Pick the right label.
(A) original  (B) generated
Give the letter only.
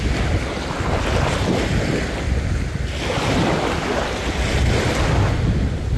A